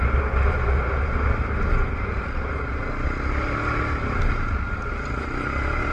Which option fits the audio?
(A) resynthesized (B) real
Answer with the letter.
B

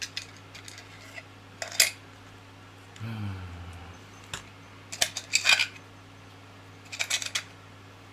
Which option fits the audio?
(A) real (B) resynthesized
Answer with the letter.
A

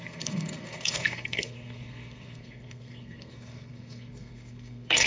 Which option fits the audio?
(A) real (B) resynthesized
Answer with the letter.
B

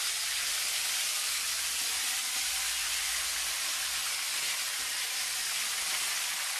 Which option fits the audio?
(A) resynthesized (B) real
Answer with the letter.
B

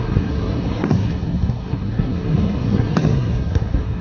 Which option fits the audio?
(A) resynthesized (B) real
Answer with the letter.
A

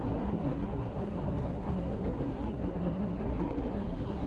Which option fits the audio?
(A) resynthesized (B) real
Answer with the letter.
A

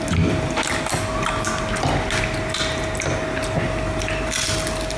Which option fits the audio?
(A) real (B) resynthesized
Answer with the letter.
A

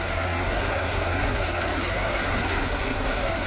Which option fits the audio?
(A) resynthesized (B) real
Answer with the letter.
A